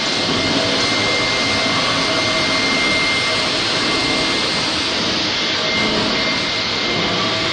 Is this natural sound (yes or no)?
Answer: yes